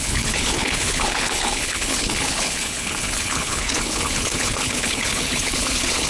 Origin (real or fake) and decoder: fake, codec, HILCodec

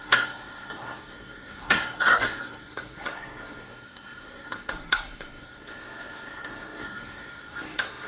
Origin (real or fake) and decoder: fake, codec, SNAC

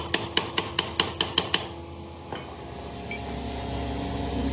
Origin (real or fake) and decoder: real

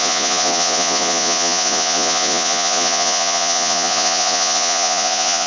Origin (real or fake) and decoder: fake, vocoder, Vocos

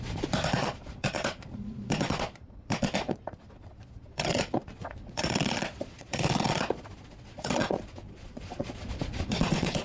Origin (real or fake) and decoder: fake, vocoder, Vocos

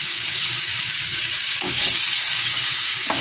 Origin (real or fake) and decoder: fake, codec, DAC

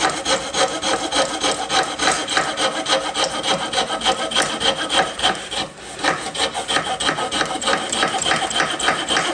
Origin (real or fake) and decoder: real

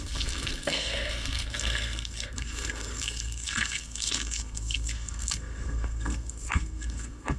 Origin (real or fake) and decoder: fake, codec, SNAC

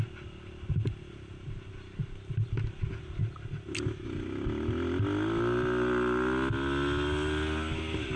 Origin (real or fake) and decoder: real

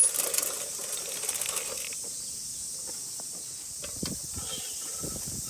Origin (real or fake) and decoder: real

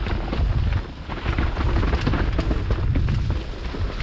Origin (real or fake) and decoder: real